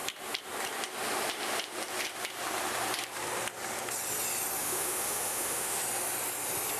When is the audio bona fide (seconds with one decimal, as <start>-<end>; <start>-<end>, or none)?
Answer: 0.0-4.6; 5.8-6.8

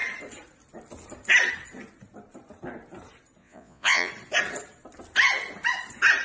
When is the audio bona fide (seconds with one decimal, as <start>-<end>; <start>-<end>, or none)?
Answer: 0.0-3.4; 4.1-6.2

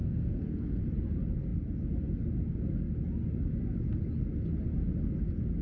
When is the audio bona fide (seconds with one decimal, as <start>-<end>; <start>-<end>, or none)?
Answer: 0.8-5.6

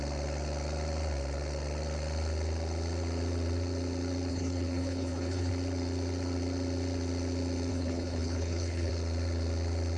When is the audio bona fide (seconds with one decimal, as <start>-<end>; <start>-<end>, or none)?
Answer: 0.0-4.3; 5.5-7.7; 8.9-10.0

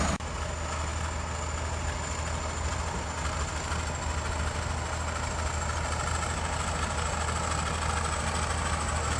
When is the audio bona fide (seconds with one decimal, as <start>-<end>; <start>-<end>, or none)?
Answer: 0.0-9.2

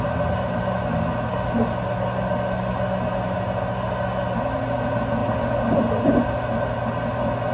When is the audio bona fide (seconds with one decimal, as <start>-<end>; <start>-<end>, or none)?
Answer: 0.0-7.5

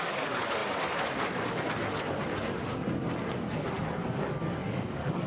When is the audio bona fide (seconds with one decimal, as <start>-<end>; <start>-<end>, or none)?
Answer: 0.0-4.6